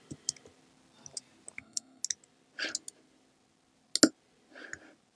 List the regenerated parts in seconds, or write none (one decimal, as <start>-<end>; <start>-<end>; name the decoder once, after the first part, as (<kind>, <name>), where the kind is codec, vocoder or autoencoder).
1.6-2.0 (codec, SNAC)